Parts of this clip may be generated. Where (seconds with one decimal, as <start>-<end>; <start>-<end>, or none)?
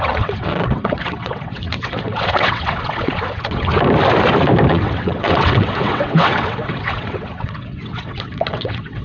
0.0-3.7; 4.7-9.0